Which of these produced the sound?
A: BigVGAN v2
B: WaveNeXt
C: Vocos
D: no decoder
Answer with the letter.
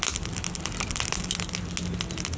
D